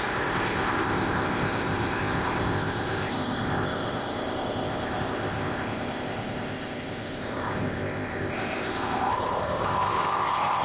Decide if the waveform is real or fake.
fake